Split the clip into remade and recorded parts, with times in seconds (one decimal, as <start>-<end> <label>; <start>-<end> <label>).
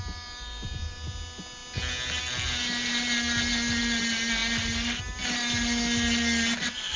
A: 0.0-7.0 recorded